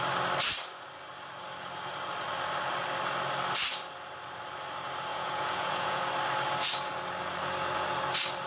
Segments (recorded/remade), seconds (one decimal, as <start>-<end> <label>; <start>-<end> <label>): 0.0-5.1 recorded; 5.1-6.0 remade; 6.0-8.5 recorded